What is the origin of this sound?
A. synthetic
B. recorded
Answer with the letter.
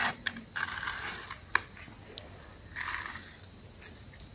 B